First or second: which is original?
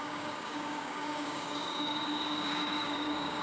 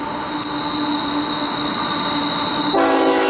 second